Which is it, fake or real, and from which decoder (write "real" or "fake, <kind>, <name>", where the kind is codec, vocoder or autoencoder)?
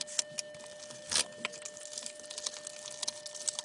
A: real